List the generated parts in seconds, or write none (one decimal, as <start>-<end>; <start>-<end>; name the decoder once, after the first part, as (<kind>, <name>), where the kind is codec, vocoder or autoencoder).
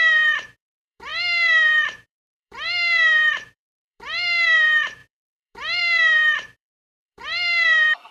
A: 0.0-8.1 (vocoder, BigVGAN v2)